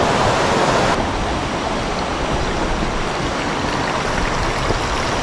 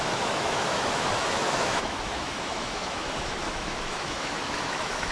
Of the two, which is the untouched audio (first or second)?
first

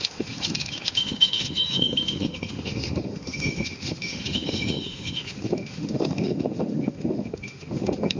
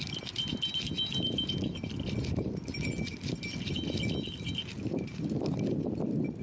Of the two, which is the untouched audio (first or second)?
second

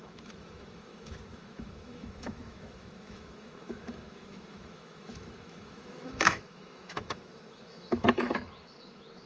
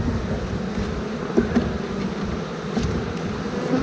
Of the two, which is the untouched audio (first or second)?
second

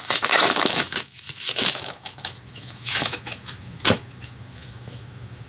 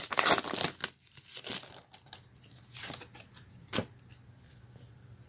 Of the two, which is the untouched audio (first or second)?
second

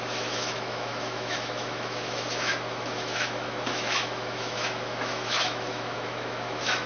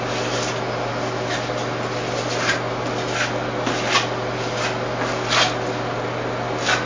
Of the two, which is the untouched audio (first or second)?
second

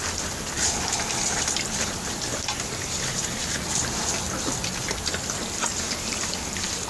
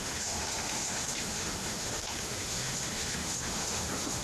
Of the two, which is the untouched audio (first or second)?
first